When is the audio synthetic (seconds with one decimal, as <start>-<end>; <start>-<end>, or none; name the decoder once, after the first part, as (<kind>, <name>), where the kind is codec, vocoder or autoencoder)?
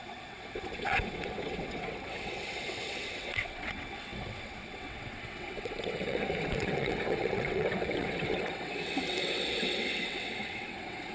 0.0-11.1 (vocoder, WaveNeXt)